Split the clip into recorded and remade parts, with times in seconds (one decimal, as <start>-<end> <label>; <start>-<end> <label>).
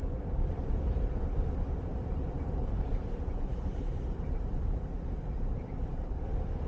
0.0-6.7 remade